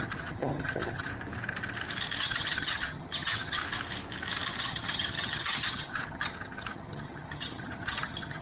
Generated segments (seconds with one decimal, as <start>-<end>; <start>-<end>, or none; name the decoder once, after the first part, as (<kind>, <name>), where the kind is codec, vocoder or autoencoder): 0.0-1.1 (vocoder, HiFi-GAN); 2.2-3.6; 4.6-8.4